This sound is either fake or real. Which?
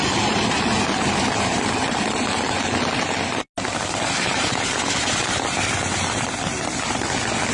real